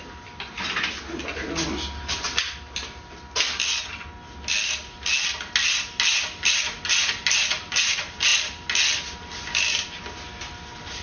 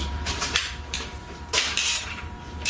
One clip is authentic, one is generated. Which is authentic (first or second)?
first